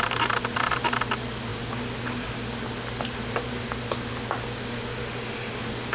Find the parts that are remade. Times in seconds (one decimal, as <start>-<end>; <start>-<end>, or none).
none